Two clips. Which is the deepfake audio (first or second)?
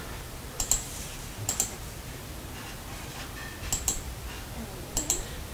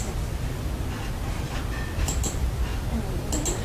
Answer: first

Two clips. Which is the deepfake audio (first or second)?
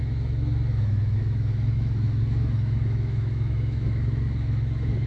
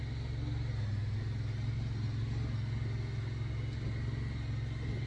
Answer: first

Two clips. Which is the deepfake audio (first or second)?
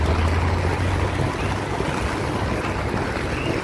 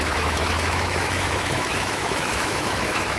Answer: second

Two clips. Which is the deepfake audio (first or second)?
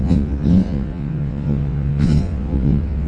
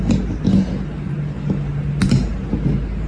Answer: first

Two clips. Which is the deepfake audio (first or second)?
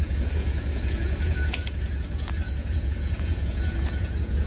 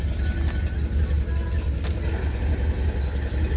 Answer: first